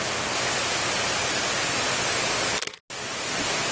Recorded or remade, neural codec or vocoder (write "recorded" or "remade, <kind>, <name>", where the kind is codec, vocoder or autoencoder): recorded